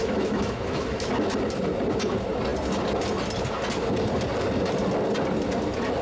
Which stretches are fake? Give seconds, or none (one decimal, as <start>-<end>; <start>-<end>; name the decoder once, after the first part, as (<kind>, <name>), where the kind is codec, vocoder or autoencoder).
0.0-1.1 (autoencoder, DAC-VAE)